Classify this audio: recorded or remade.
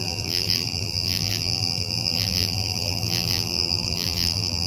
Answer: remade